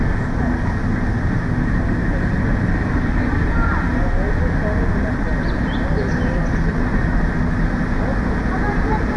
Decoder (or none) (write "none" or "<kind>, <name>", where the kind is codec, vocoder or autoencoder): none